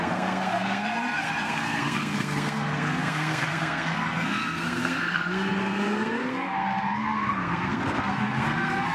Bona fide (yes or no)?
no